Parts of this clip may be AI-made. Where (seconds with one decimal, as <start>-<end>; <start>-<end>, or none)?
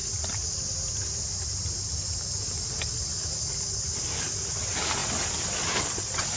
0.0-0.6